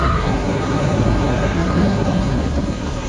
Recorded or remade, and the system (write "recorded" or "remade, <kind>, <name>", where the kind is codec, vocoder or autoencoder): remade, codec, SNAC